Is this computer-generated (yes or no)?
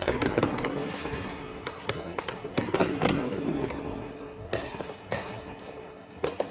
yes